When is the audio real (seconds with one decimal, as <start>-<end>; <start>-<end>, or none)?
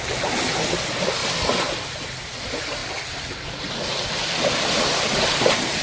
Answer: 0.0-5.8